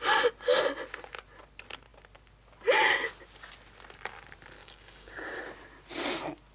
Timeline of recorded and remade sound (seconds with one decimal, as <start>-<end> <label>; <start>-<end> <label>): 0.0-4.6 recorded; 4.6-5.4 remade; 5.4-6.5 recorded